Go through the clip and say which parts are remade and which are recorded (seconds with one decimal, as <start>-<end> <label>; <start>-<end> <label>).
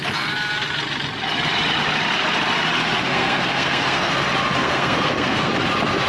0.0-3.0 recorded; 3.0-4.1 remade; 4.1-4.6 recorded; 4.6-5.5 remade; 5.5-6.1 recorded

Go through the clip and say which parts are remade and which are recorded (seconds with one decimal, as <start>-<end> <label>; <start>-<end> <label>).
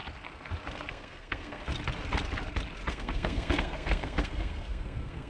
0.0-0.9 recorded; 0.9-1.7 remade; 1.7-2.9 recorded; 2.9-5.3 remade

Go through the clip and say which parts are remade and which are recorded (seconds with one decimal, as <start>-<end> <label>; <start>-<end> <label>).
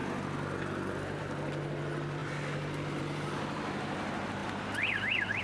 0.0-5.4 recorded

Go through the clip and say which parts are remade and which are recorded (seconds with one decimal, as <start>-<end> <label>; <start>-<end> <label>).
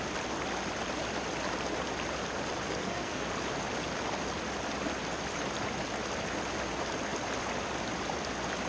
0.0-2.8 recorded; 2.8-3.3 remade; 3.3-8.7 recorded